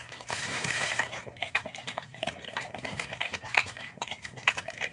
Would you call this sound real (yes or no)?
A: no